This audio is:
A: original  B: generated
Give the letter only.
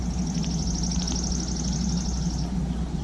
A